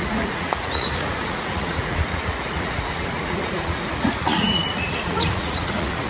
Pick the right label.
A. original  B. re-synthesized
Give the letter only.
B